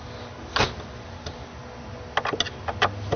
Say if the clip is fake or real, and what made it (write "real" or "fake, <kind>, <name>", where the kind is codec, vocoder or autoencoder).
real